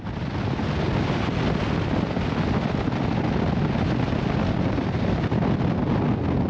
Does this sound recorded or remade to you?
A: recorded